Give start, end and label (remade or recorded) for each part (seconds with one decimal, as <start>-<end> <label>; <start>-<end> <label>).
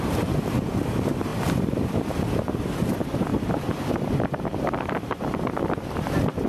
0.0-5.6 remade; 5.6-6.5 recorded